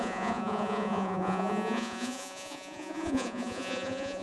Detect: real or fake fake